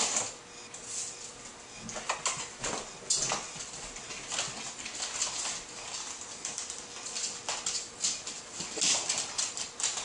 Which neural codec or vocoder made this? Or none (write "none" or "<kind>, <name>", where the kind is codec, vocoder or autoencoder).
none